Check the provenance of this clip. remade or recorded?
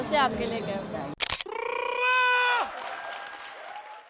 recorded